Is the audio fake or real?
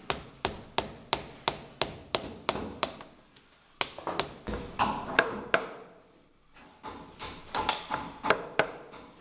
real